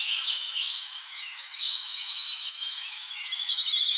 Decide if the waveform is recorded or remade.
remade